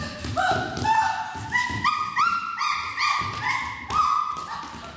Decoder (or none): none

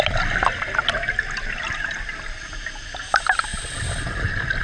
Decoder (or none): none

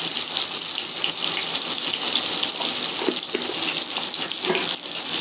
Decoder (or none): none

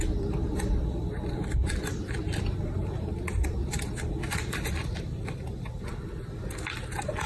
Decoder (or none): vocoder, BigVGAN v2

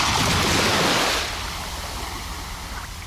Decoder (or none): none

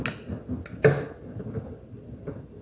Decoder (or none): none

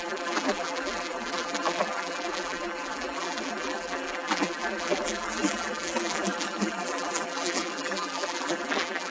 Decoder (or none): vocoder, BigVGAN v2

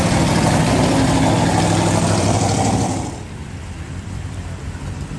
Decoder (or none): vocoder, BigVGAN v2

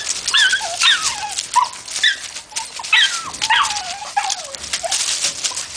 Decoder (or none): none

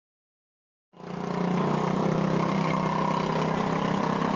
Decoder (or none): none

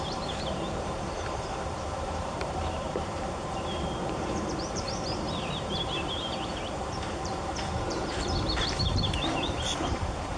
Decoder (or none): vocoder, BigVGAN v2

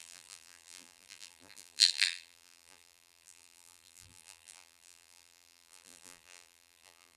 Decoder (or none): vocoder, BigVGAN v2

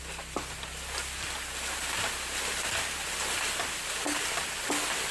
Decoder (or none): none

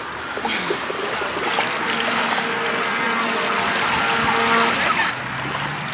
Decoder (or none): none